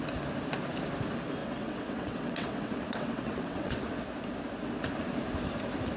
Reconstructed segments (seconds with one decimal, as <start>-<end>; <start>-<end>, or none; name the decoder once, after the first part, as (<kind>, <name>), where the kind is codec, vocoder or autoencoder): 1.4-3.9 (vocoder, WaveNeXt)